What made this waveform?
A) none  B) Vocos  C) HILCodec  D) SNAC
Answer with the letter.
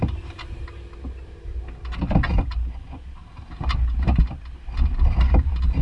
A